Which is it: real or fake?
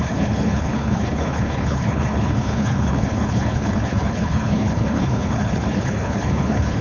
fake